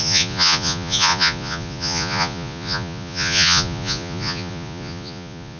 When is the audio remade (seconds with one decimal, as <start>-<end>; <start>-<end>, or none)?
0.0-5.6